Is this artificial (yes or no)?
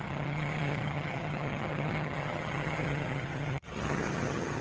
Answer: yes